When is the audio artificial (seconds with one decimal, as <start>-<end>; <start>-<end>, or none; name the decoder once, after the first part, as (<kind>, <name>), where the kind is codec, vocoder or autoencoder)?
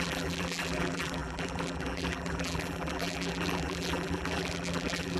0.0-5.2 (vocoder, BigVGAN v2)